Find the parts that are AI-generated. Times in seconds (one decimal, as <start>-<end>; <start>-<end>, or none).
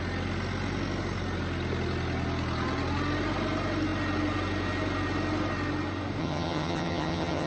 6.2-7.5